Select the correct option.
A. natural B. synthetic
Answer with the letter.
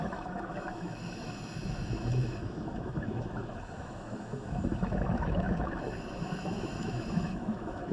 B